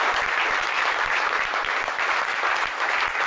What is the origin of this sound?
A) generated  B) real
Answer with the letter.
B